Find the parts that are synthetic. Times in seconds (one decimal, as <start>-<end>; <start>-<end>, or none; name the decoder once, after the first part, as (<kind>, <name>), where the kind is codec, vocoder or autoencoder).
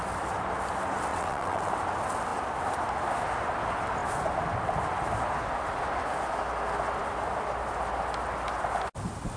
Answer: 1.1-1.7 (vocoder, WaveNeXt)